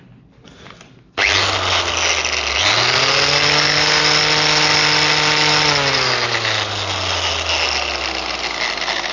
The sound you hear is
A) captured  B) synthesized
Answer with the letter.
A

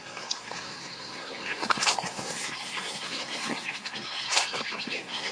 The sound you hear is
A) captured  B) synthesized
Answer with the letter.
B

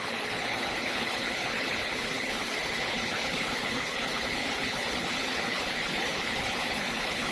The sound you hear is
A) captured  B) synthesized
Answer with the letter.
B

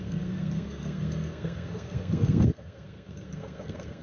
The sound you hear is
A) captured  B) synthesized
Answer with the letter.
B